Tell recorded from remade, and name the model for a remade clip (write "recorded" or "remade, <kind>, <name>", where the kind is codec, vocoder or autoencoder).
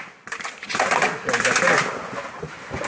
recorded